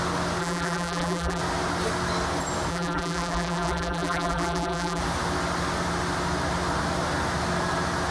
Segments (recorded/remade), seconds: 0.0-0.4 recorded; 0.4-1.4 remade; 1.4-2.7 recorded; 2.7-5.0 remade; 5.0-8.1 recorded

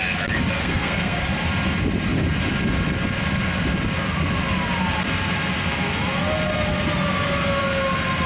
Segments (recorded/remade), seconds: 0.0-0.6 recorded; 0.6-1.2 remade; 1.2-8.3 recorded

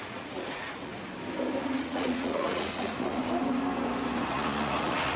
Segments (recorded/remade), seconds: 0.0-0.9 remade; 0.9-1.6 recorded; 1.6-3.2 remade; 3.2-4.3 recorded; 4.3-5.2 remade

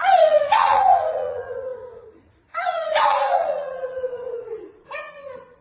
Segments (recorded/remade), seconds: 0.0-5.6 remade

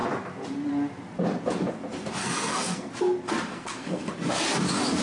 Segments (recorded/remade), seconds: 0.0-2.2 recorded; 2.2-2.9 remade; 2.9-3.5 recorded; 3.5-4.1 remade; 4.1-5.0 recorded

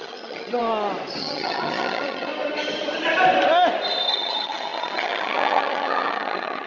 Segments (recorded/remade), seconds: 0.0-0.6 remade; 0.6-1.2 recorded; 1.2-2.3 remade; 2.3-4.1 recorded; 4.1-6.7 remade

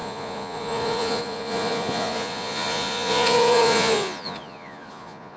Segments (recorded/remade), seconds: 0.0-5.4 remade

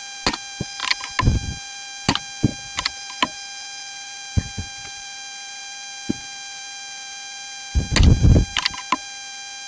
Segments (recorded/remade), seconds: 0.0-9.7 recorded